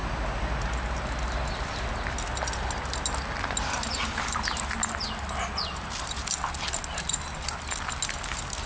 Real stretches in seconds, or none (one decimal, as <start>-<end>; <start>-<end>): 0.0-8.7